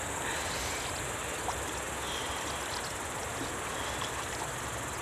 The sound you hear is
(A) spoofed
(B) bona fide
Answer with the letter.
B